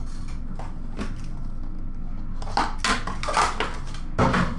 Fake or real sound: real